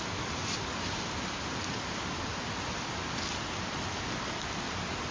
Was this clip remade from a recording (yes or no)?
no